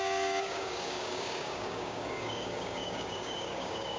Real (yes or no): no